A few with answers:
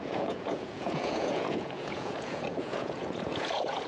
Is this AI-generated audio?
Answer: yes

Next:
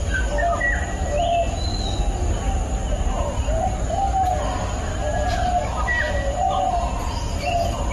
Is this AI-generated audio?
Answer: no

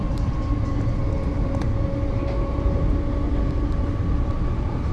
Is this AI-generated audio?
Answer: no